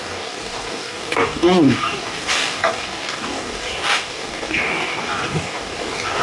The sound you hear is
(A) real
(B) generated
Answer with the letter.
B